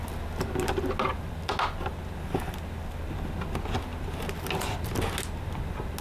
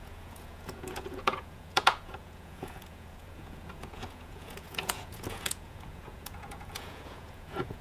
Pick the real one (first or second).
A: first